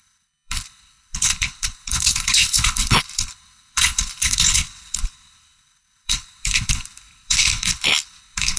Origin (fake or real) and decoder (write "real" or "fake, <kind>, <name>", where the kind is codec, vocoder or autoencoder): fake, codec, HILCodec